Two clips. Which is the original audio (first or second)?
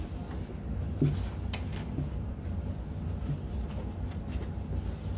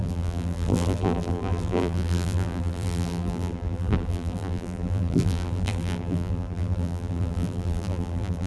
first